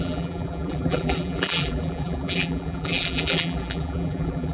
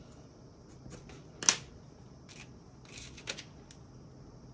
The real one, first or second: second